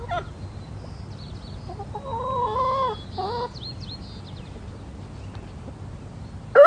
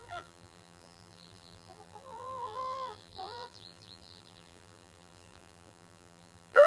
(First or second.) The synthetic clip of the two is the second